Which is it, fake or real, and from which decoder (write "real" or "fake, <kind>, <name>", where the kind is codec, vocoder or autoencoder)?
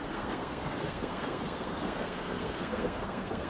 fake, codec, SNAC